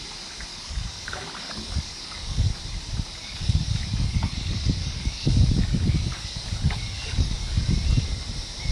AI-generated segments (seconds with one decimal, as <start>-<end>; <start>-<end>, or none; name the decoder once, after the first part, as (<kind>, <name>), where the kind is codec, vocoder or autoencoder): 0.5-2.6 (codec, DAC); 3.2-7.6